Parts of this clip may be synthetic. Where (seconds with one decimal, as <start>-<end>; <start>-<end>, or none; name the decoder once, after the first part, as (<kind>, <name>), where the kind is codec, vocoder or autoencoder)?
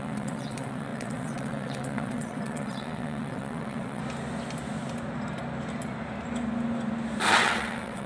0.0-4.0 (vocoder, WaveNeXt); 7.3-8.1